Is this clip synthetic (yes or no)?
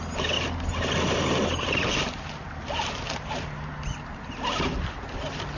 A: no